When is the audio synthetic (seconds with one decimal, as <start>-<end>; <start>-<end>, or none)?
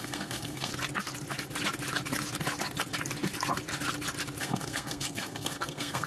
0.0-0.7; 4.4-6.1